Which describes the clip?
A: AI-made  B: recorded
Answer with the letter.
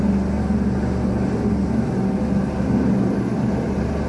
B